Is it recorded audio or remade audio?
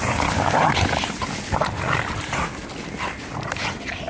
recorded